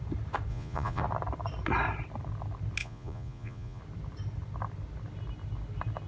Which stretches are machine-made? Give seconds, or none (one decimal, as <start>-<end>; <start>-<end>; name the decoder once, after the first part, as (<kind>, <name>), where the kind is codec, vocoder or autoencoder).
0.5-1.0 (vocoder, Vocos); 2.8-3.8